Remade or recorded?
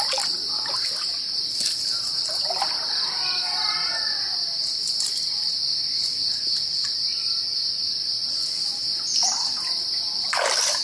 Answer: recorded